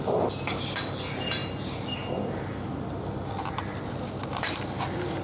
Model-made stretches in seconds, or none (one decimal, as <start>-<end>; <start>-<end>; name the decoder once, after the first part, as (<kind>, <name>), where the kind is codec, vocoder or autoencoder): none